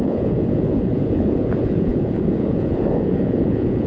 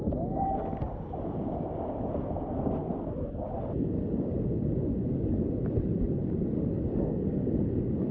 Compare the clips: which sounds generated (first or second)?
first